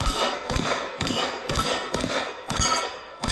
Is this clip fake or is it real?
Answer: fake